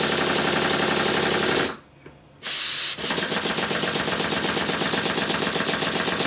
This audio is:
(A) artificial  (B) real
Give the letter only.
B